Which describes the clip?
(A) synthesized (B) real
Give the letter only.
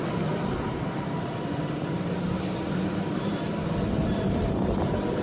A